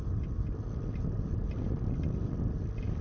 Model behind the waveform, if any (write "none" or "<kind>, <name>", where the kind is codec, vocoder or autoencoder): none